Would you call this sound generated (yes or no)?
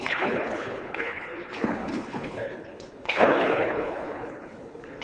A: yes